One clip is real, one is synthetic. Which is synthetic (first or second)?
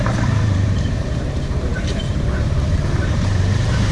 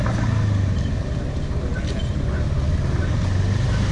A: first